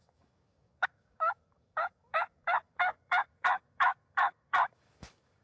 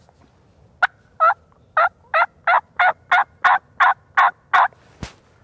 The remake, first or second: first